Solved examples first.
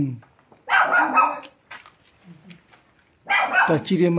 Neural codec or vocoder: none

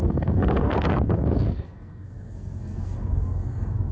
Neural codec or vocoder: codec, SNAC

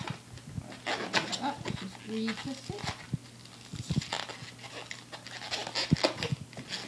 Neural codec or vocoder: none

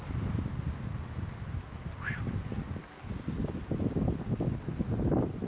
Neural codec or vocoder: none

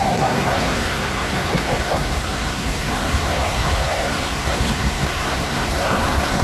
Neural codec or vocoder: codec, SNAC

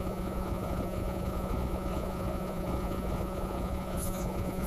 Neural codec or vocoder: vocoder, Vocos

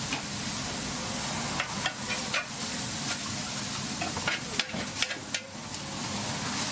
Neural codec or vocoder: none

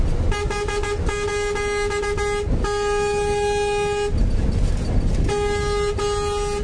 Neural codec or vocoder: none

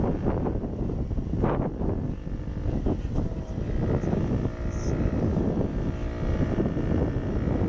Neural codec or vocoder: none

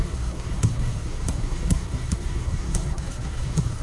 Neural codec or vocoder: codec, SNAC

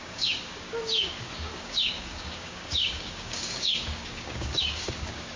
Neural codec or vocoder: codec, DAC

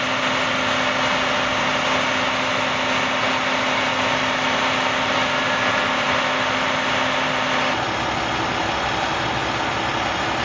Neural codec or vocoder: none